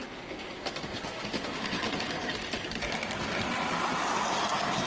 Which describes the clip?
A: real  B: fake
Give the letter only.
A